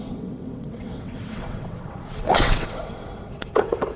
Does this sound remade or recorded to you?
remade